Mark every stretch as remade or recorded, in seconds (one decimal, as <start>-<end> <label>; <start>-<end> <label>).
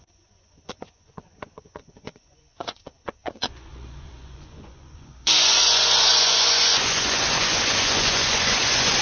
0.0-9.0 remade